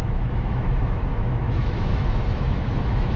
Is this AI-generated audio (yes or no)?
yes